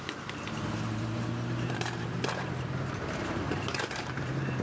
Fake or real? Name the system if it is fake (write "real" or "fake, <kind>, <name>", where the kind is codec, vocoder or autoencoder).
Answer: fake, vocoder, BigVGAN v2